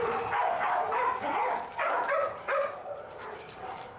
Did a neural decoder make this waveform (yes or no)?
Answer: yes